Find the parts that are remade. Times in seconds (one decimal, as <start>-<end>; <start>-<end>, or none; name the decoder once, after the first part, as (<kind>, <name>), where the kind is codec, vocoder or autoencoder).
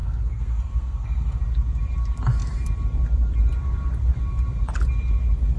0.0-1.4 (codec, SNAC)